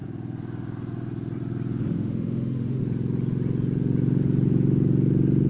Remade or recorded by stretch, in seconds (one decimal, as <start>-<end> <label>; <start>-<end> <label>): 0.0-1.8 recorded; 1.8-2.8 remade; 2.8-5.5 recorded